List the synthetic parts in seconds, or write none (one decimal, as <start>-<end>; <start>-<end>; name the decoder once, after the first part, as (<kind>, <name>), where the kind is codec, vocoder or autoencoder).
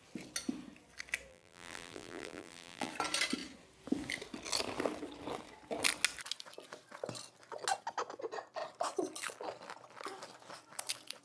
1.3-2.9 (vocoder, BigVGAN v2)